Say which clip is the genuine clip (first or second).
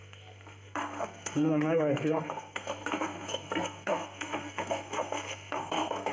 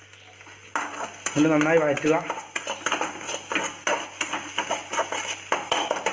second